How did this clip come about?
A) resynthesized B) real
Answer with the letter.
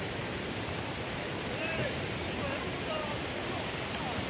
A